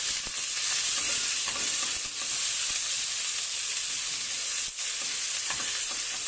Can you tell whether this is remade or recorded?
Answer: recorded